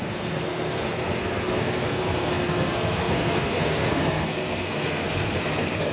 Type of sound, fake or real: fake